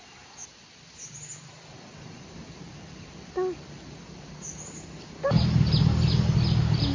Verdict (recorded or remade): recorded